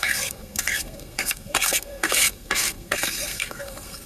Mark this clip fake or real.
fake